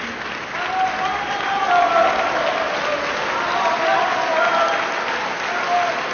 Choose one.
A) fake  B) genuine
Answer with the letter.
B